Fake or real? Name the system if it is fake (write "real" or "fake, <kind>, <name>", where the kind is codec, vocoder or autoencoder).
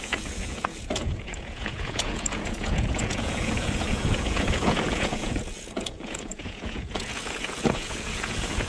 fake, vocoder, Vocos